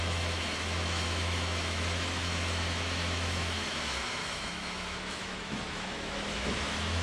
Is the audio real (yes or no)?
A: no